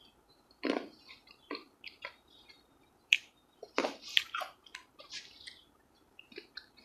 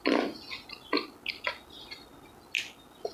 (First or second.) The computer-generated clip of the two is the first